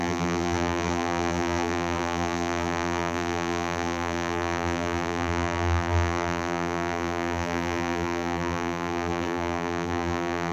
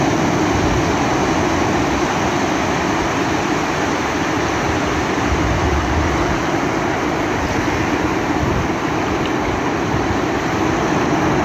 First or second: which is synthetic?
first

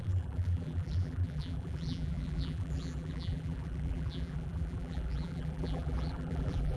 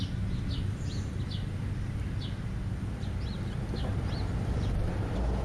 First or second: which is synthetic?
first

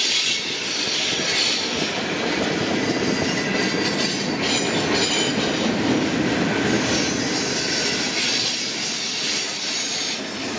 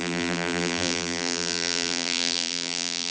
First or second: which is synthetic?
second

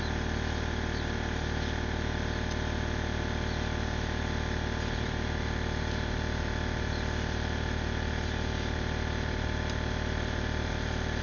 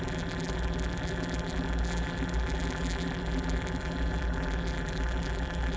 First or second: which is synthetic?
second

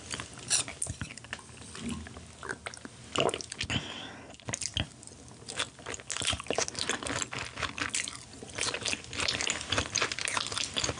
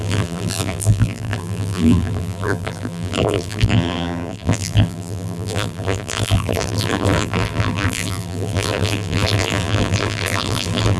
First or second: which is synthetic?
second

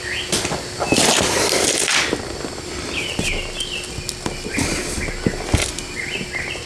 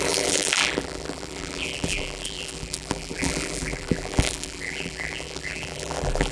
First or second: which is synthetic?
second